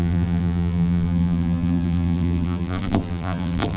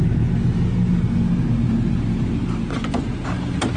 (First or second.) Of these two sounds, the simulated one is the first